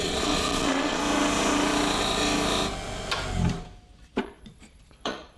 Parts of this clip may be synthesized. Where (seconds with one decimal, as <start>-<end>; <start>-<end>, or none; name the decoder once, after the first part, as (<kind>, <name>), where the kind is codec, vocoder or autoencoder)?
0.0-1.0 (vocoder, Vocos); 4.2-5.4